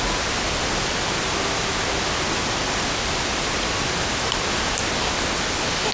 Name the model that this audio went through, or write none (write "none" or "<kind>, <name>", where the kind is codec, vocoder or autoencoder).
none